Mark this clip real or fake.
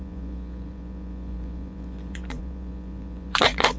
fake